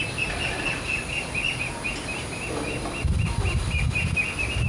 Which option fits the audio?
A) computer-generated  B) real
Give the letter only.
B